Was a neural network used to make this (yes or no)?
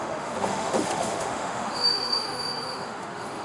yes